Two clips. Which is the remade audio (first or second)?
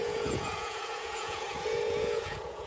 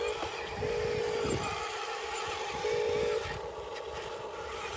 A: first